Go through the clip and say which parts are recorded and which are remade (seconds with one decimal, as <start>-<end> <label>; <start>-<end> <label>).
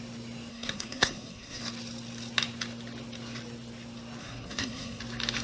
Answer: 0.0-0.5 recorded; 0.5-1.6 remade; 1.6-4.2 recorded; 4.2-5.0 remade; 5.0-5.4 recorded